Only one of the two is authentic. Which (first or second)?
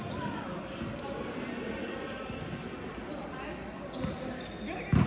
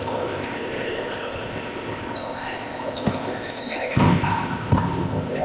first